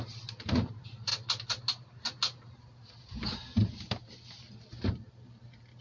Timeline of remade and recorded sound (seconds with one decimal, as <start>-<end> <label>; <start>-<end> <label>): 0.0-5.8 recorded